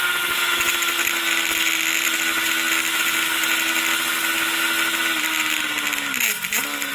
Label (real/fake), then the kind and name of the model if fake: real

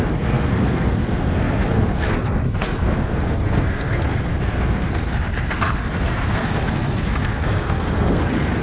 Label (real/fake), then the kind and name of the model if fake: fake, codec, SNAC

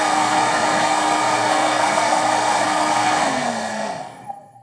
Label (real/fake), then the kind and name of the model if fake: fake, codec, SNAC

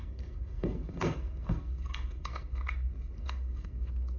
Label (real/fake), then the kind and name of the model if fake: fake, codec, SNAC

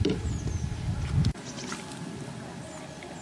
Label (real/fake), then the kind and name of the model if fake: real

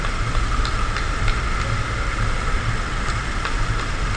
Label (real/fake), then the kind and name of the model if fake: real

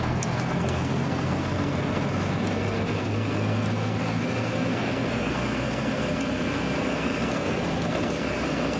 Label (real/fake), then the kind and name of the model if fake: fake, codec, SNAC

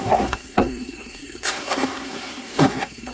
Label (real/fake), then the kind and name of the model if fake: fake, codec, SNAC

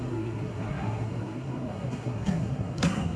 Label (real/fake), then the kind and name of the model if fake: fake, codec, SNAC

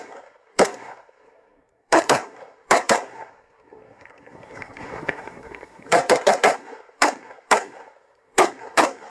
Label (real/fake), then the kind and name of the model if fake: fake, codec, SNAC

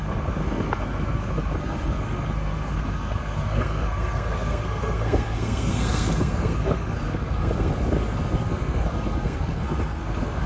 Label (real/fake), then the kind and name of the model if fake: fake, codec, SNAC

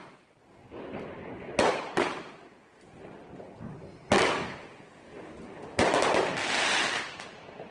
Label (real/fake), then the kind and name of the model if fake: real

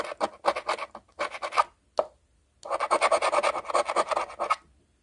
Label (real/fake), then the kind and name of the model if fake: real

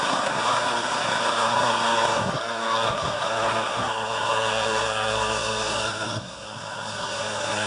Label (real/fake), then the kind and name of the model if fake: fake, codec, SNAC